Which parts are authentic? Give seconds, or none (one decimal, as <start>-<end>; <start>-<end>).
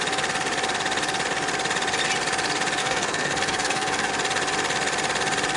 0.0-2.8; 4.1-5.6